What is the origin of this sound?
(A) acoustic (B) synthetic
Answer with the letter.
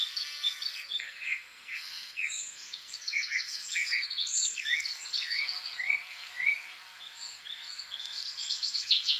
B